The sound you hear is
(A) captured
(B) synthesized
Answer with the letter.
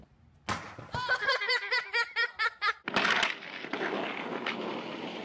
A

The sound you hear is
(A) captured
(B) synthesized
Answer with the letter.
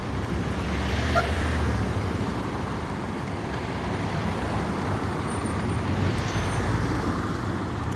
B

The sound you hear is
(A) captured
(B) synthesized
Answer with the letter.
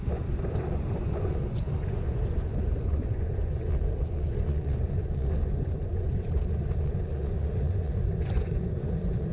B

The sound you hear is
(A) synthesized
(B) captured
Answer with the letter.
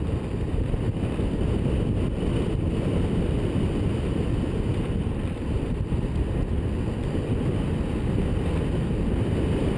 B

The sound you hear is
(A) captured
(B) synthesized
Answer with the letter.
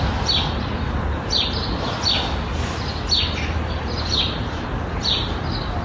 A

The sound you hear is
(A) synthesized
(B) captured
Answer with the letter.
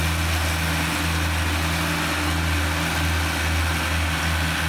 B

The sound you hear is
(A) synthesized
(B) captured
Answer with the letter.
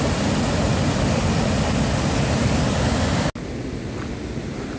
B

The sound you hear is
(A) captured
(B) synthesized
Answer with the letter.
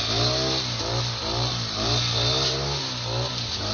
A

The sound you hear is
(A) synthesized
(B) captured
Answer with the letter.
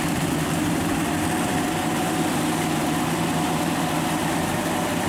A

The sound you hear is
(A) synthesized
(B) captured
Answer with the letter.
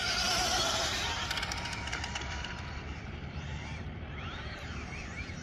A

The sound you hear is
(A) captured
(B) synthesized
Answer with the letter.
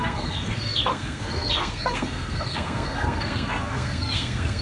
B